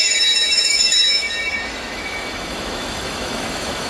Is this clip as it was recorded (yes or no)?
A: no